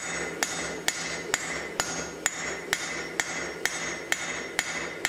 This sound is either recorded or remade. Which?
recorded